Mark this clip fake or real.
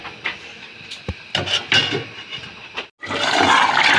real